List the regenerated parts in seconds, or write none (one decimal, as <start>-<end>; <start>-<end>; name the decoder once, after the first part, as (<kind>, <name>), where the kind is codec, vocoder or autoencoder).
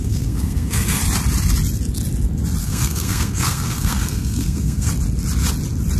0.0-1.0 (codec, SNAC); 2.6-4.9